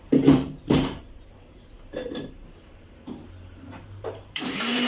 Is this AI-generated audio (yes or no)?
yes